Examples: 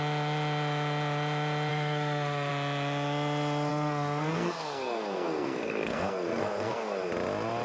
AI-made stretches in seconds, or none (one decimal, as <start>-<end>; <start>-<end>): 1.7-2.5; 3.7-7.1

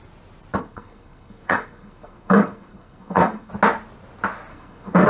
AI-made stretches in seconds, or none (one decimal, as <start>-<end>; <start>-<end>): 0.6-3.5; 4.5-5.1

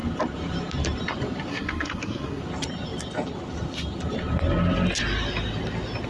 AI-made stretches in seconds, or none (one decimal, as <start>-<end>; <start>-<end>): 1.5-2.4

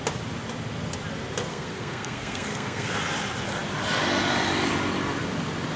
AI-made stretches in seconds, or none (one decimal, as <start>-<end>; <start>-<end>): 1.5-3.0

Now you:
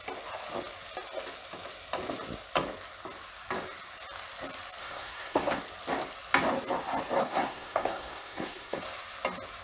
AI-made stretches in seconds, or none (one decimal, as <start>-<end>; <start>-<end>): 4.8-5.6; 7.2-8.8

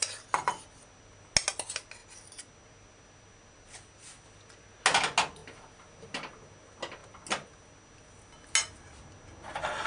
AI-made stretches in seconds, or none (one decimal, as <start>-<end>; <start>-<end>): none